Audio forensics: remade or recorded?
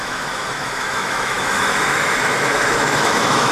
remade